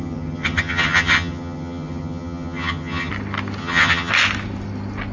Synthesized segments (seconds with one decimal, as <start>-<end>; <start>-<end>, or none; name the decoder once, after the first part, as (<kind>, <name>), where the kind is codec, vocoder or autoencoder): 0.0-3.1 (vocoder, HiFi-GAN); 3.6-4.1